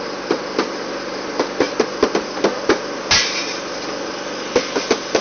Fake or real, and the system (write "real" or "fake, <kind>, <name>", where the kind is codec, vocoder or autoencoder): real